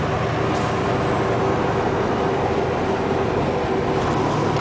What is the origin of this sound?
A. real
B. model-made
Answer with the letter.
A